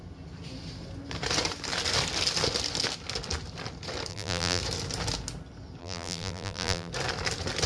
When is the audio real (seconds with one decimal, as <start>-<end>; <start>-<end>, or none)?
0.0-4.1; 4.6-5.8; 6.9-7.7